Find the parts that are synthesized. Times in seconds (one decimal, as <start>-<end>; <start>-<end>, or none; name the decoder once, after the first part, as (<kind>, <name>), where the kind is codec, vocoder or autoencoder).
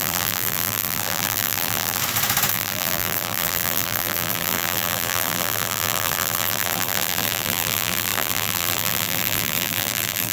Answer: 0.0-2.0 (vocoder, BigVGAN v2); 2.5-10.3